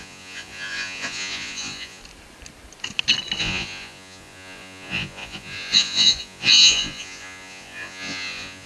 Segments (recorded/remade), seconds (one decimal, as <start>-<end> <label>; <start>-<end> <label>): 0.0-2.0 remade; 2.0-3.4 recorded; 3.4-8.7 remade